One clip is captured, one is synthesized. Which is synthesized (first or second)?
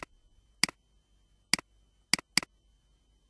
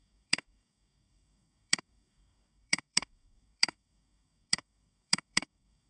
second